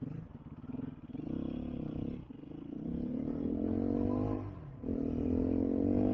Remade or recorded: recorded